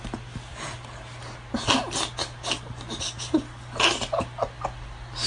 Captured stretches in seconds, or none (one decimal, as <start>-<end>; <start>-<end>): 0.0-5.3